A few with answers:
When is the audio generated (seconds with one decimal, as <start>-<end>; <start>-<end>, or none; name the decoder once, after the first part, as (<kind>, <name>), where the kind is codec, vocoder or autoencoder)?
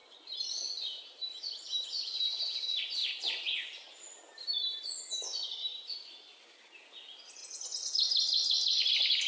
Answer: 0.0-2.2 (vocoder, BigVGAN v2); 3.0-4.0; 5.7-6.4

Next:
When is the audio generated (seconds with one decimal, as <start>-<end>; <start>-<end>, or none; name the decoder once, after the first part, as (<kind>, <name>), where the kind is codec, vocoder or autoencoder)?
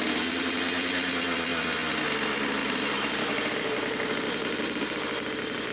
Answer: 2.6-4.6 (vocoder, BigVGAN v2)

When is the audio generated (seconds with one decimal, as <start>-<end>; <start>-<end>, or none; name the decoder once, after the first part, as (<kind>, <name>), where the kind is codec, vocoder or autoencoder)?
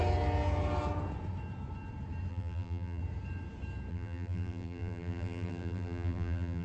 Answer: 2.3-3.0 (vocoder, BigVGAN v2); 3.9-6.6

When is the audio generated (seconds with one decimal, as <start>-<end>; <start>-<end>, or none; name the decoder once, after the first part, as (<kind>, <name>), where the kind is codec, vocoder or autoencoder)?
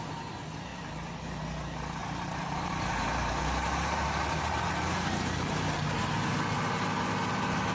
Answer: 2.0-6.0 (vocoder, BigVGAN v2)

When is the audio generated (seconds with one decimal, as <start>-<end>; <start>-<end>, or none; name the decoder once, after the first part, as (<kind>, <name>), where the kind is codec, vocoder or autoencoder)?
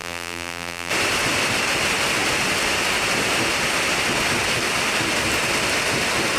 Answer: 0.0-0.9 (vocoder, BigVGAN v2)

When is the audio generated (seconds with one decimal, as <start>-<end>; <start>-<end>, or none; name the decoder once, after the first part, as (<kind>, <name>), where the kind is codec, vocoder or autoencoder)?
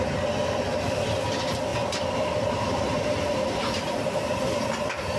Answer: 1.7-4.6 (vocoder, BigVGAN v2)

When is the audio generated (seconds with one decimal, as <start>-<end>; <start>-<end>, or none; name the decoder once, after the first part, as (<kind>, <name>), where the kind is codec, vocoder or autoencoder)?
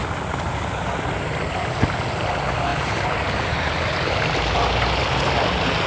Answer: 2.7-4.0 (vocoder, BigVGAN v2)